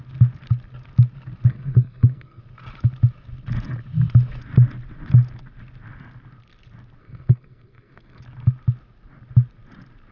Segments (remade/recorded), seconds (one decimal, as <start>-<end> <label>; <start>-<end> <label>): 0.0-1.5 recorded; 1.5-2.4 remade; 2.4-7.0 recorded; 7.0-8.2 remade; 8.2-10.1 recorded